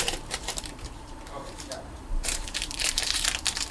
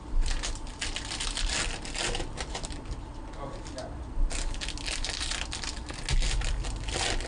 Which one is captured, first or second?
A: second